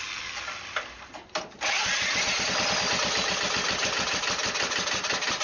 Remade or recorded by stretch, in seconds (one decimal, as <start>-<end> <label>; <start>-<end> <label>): 0.0-5.4 recorded